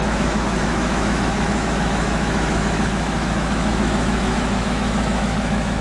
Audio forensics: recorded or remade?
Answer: remade